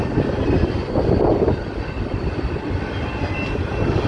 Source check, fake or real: real